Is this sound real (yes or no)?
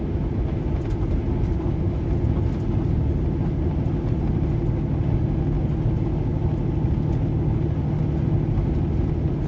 yes